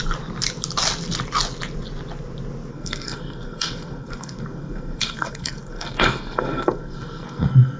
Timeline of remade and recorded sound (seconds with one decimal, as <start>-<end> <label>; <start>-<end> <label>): 0.0-2.7 recorded; 2.7-7.8 remade